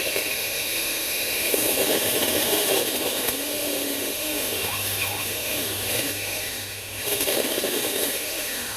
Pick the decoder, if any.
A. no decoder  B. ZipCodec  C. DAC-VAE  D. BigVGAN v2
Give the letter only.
C